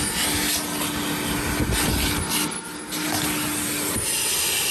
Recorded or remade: recorded